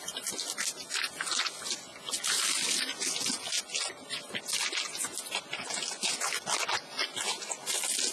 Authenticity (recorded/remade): recorded